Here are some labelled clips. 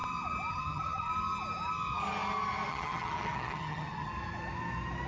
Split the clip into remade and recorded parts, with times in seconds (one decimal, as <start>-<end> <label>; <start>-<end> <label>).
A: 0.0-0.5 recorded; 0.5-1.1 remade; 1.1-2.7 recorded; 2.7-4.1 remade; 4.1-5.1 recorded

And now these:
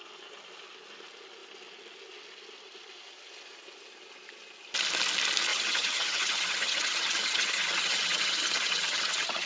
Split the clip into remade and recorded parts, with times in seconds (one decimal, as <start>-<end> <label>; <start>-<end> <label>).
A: 0.0-5.5 recorded; 5.5-9.5 remade

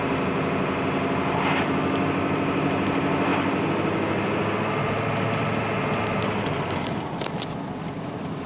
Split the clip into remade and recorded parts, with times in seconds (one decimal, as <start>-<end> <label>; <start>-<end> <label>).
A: 0.0-8.5 recorded